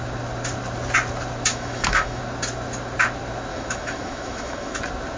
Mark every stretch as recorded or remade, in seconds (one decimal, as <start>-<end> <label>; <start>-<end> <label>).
0.0-1.5 recorded; 1.5-2.2 remade; 2.2-3.5 recorded; 3.5-4.8 remade; 4.8-5.2 recorded